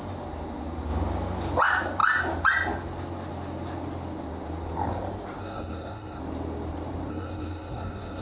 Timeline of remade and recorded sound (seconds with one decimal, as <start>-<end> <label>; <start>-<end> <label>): 0.0-5.4 recorded; 5.4-6.2 remade; 6.2-7.1 recorded; 7.1-8.2 remade

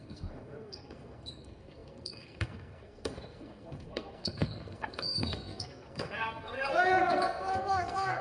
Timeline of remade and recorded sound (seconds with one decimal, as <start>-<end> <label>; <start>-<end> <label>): 0.0-8.2 remade